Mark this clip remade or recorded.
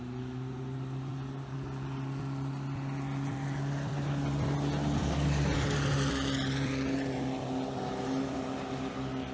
recorded